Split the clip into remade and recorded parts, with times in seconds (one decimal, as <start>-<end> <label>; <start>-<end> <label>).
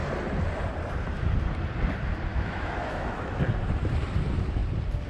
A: 0.0-2.3 recorded; 2.3-3.4 remade; 3.4-5.1 recorded